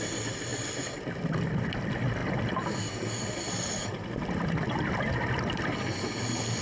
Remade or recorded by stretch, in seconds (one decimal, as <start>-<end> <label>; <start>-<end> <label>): 0.0-0.5 recorded; 0.5-1.7 remade; 1.7-6.6 recorded